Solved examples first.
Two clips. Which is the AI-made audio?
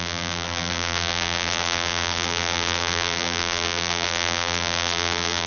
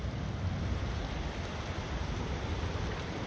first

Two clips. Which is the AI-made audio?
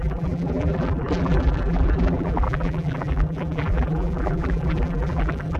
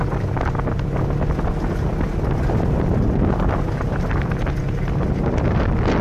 first